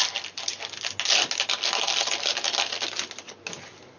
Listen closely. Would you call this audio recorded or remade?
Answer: recorded